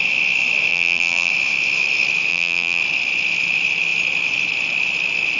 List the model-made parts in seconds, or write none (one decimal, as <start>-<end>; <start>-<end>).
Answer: 0.7-1.3; 2.3-2.8